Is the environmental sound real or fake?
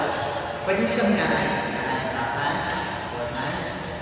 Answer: real